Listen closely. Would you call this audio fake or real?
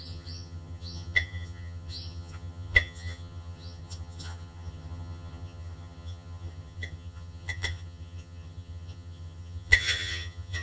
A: fake